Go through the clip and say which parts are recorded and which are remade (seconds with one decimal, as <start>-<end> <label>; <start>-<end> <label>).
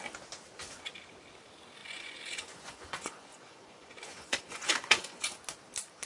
0.0-1.8 recorded; 1.8-5.4 remade; 5.4-6.0 recorded